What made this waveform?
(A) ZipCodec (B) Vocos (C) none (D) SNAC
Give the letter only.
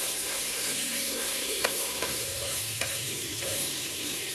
D